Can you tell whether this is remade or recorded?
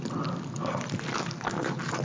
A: recorded